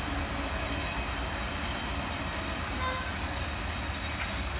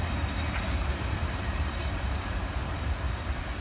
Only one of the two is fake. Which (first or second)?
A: second